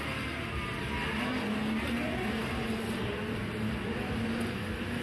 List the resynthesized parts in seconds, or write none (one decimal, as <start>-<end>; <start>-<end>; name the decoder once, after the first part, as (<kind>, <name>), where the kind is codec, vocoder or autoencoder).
none